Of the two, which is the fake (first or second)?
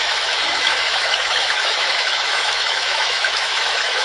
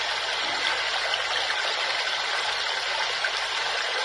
first